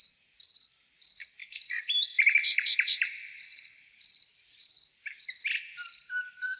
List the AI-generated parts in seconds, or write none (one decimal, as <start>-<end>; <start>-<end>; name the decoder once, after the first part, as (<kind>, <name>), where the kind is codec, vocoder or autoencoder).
1.4-3.1 (vocoder, BigVGAN v2); 3.5-4.1